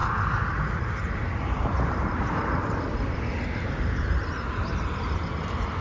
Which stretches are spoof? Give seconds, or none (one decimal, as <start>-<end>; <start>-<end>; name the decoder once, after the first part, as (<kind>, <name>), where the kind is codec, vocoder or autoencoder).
1.4-5.8 (vocoder, BigVGAN v2)